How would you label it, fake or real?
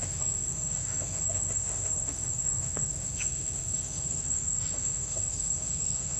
fake